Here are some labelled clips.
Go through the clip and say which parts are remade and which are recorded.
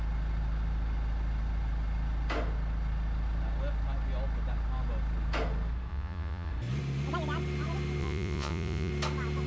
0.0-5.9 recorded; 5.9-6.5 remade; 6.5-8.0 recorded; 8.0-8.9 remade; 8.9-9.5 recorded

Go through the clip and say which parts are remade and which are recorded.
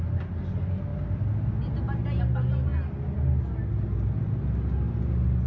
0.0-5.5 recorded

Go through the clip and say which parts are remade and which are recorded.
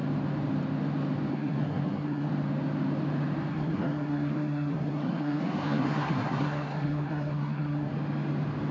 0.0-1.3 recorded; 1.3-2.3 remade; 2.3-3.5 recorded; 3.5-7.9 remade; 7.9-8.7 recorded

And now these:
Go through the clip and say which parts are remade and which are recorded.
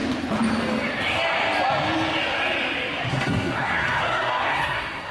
0.0-3.1 recorded; 3.1-5.1 remade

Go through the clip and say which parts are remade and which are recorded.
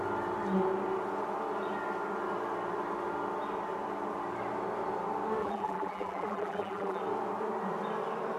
0.0-5.4 recorded; 5.4-7.0 remade; 7.0-8.4 recorded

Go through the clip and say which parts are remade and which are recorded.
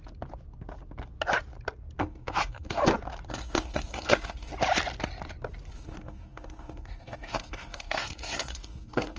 0.0-2.0 recorded; 2.0-2.8 remade; 2.8-3.3 recorded; 3.3-4.5 remade; 4.5-5.7 recorded; 5.7-9.2 remade